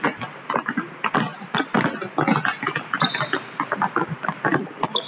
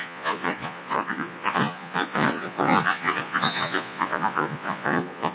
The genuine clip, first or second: first